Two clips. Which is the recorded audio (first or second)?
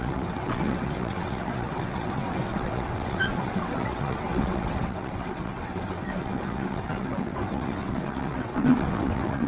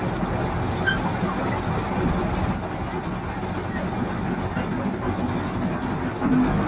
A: second